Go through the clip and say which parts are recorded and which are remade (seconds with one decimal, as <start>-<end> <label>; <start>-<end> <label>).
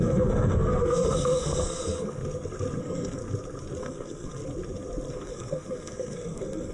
0.0-2.2 remade; 2.2-2.8 recorded; 2.8-3.2 remade; 3.2-3.8 recorded; 3.8-4.4 remade; 4.4-5.1 recorded; 5.1-6.7 remade